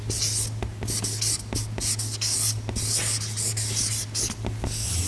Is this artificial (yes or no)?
no